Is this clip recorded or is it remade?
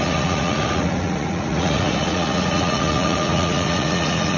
remade